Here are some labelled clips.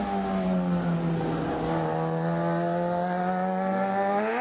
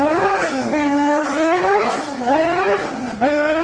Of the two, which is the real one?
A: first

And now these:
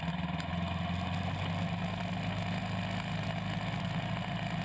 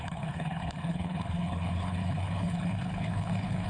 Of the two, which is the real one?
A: first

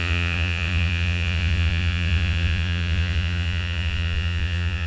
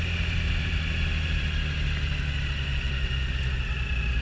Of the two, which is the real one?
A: second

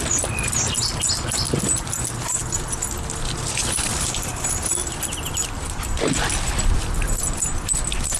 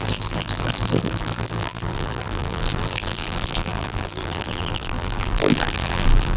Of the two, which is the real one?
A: first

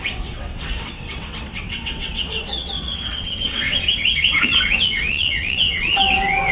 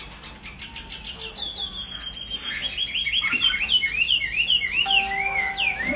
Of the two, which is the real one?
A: second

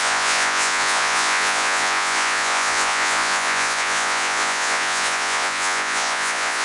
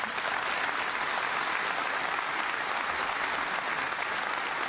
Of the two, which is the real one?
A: second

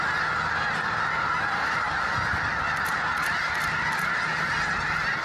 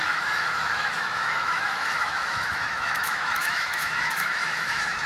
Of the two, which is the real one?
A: first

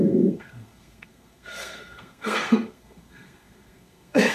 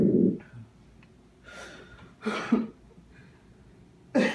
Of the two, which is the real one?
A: second